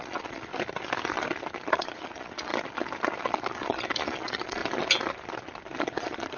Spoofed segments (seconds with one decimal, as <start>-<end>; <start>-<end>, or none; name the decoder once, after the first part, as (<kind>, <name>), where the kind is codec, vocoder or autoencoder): 0.0-0.5 (vocoder, Vocos); 1.7-2.5; 3.2-4.6; 5.8-6.4